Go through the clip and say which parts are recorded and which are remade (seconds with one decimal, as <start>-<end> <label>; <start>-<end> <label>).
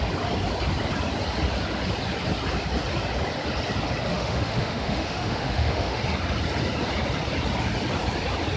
0.0-4.1 recorded; 4.1-6.0 remade; 6.0-8.6 recorded